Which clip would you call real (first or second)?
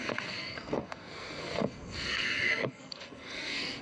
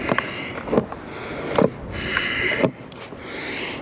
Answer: second